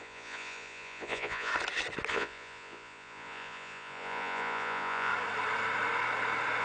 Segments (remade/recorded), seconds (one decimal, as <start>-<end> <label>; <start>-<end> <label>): 0.0-1.5 remade; 1.5-2.1 recorded; 2.1-5.1 remade; 5.1-6.6 recorded